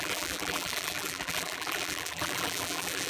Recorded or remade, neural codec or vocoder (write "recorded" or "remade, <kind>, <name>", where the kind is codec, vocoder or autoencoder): remade, vocoder, BigVGAN v2